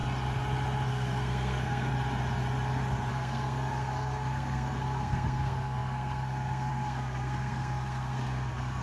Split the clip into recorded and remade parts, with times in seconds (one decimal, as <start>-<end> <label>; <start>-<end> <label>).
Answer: 0.0-0.9 recorded; 0.9-1.9 remade; 1.9-3.1 recorded; 3.1-8.8 remade